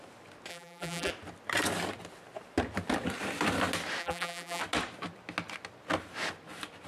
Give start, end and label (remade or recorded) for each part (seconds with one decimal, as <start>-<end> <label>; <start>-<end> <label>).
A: 0.0-0.5 recorded; 0.5-1.1 remade; 1.1-4.0 recorded; 4.0-4.6 remade; 4.6-6.9 recorded